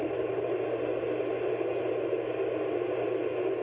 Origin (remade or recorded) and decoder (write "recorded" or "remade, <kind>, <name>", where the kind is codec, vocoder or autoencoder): recorded